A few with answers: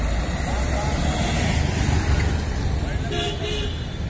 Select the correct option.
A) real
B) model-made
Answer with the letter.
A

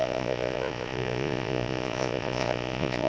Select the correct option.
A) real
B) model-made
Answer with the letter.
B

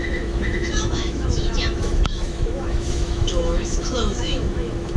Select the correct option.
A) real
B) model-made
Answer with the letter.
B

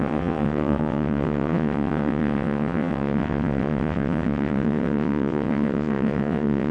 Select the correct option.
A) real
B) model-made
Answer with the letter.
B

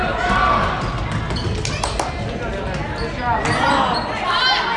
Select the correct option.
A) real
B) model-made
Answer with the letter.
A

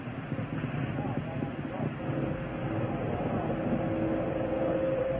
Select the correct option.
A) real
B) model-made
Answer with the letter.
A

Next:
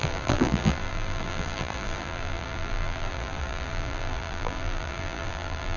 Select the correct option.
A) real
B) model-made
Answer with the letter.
B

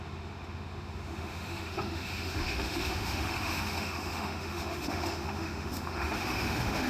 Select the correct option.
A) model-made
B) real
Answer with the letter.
A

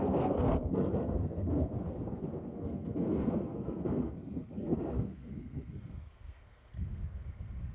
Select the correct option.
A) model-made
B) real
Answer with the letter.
A